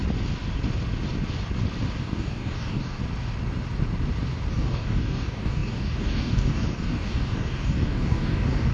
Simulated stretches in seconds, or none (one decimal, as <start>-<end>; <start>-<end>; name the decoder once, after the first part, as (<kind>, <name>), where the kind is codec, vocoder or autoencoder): 2.0-3.0 (codec, DAC); 4.5-8.7